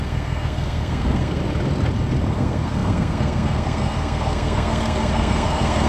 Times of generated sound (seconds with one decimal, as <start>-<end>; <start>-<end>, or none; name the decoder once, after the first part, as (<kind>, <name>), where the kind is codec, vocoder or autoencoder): 0.0-1.4 (codec, SNAC); 2.3-5.9